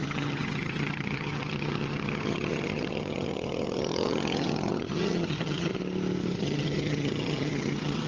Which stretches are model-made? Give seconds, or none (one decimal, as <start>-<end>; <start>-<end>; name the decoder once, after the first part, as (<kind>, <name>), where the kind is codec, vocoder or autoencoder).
0.0-5.7 (vocoder, HiFi-GAN); 6.4-8.1